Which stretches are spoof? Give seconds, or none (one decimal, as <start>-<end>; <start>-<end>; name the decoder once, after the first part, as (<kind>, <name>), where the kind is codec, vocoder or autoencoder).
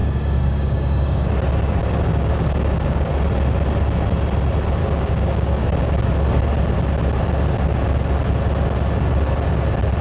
0.0-1.3 (codec, DAC); 1.8-3.1; 4.8-6.1